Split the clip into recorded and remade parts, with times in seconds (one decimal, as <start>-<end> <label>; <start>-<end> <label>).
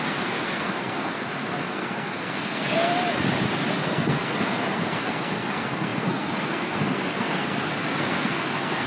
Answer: 0.0-2.9 remade; 2.9-3.8 recorded; 3.8-8.9 remade